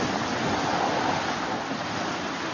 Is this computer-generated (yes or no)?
no